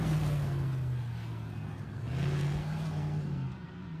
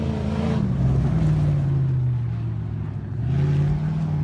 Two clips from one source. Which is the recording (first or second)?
second